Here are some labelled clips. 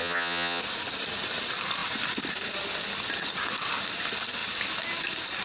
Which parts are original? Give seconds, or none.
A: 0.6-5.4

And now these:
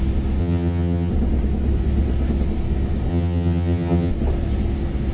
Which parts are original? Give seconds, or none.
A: 0.0-0.4; 1.1-3.1; 4.1-5.1